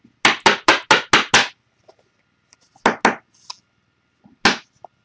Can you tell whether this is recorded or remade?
recorded